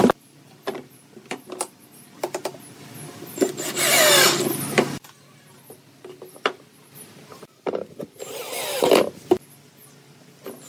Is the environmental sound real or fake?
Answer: real